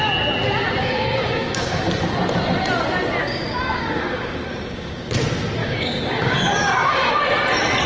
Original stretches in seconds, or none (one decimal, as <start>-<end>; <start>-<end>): 0.0-0.8; 1.9-3.2; 5.1-5.6; 7.2-7.9